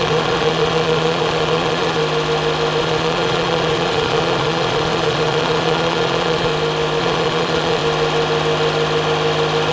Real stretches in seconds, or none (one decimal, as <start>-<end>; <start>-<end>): 2.0-2.8; 6.5-7.0; 7.8-9.7